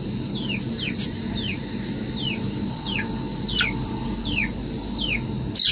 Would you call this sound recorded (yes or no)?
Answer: yes